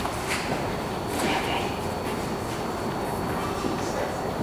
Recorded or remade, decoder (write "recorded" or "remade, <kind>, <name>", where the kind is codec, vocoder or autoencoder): recorded